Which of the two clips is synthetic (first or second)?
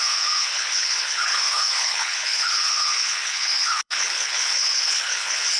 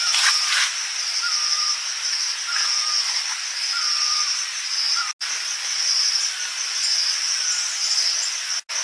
first